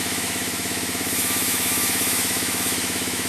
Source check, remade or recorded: remade